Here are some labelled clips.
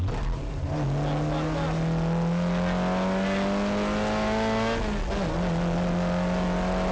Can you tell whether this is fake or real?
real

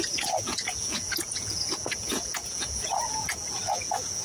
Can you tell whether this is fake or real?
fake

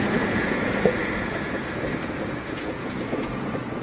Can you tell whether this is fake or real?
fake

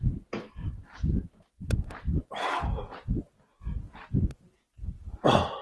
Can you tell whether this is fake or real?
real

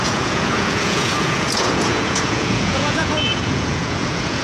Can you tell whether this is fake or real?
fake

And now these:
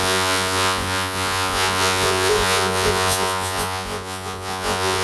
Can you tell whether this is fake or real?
fake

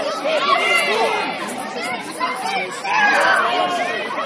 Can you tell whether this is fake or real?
real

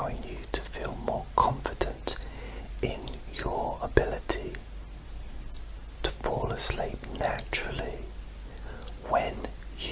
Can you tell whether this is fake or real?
real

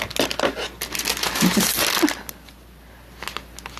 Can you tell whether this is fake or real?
real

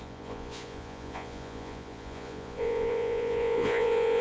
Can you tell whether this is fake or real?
fake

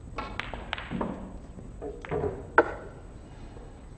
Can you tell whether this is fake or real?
real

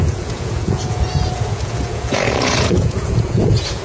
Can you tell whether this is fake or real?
fake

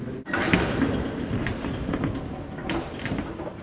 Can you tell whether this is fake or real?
real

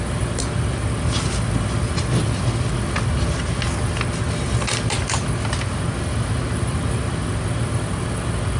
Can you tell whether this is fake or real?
real